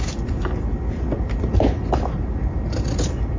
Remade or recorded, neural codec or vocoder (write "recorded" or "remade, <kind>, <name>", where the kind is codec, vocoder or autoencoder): recorded